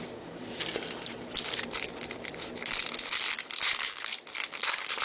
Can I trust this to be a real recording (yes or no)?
no